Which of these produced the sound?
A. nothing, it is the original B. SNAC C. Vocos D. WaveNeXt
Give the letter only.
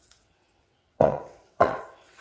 D